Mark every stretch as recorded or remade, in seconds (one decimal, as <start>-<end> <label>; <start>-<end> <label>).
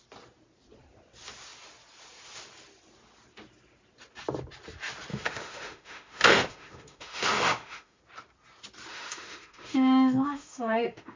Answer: 0.0-5.1 recorded; 5.1-8.0 remade; 8.0-8.9 recorded; 8.9-11.2 remade